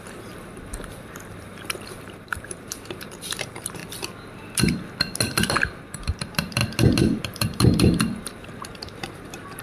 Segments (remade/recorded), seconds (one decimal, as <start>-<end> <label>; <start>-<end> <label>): 0.0-3.8 remade; 3.8-5.4 recorded; 5.4-6.6 remade; 6.6-7.2 recorded; 7.2-9.6 remade